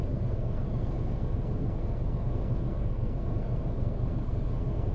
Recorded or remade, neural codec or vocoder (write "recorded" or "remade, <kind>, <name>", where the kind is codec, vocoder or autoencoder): remade, codec, SNAC